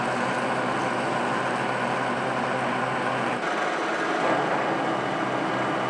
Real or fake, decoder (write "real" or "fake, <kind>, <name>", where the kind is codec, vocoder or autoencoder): real